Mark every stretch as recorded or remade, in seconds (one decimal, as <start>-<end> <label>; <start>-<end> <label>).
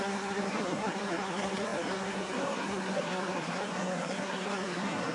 0.0-5.1 remade